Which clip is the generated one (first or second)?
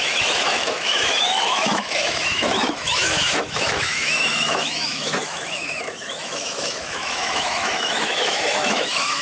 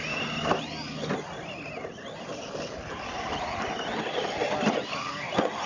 first